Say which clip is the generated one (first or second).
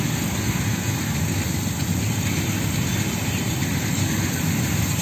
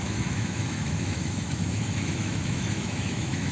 second